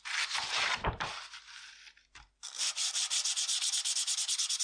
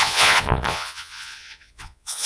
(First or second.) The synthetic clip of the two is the second